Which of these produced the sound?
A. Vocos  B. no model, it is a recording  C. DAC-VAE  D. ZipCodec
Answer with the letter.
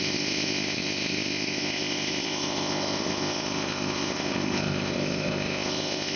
D